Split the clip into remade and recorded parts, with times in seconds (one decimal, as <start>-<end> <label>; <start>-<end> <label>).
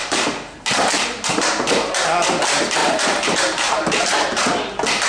0.0-2.8 recorded; 2.8-4.4 remade; 4.4-5.1 recorded